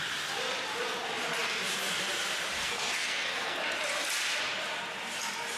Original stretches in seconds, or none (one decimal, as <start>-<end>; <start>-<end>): 0.0-2.6; 3.6-5.6